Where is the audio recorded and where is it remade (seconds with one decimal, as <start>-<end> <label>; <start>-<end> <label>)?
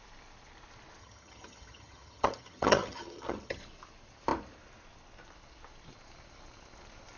0.0-1.0 recorded; 1.0-3.6 remade; 3.6-7.2 recorded